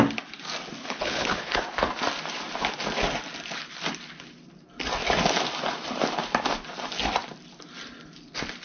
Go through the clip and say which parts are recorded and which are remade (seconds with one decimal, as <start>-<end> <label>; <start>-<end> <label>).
0.0-0.8 recorded; 0.8-1.6 remade; 1.6-8.6 recorded